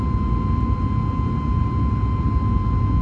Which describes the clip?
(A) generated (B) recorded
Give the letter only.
B